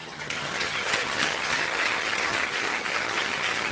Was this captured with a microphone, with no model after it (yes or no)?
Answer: no